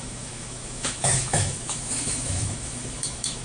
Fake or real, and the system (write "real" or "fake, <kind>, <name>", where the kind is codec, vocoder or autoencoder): fake, autoencoder, DAC-VAE